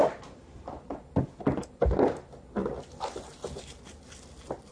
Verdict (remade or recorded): recorded